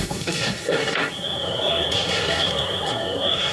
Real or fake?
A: fake